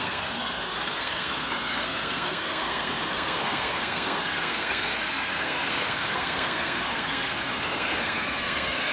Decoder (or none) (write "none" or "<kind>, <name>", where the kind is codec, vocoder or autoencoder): codec, SNAC